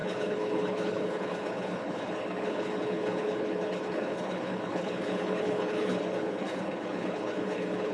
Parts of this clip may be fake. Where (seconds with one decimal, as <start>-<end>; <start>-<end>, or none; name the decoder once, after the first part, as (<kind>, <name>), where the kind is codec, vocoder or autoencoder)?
0.0-7.9 (codec, HILCodec)